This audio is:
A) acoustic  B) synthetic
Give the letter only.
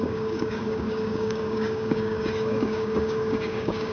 B